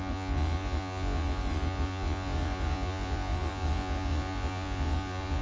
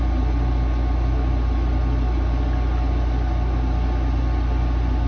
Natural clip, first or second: second